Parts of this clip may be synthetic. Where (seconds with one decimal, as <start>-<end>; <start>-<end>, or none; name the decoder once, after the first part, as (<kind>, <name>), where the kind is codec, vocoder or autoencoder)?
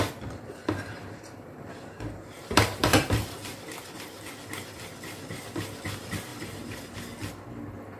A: 0.6-3.0 (vocoder, BigVGAN v2); 6.3-6.9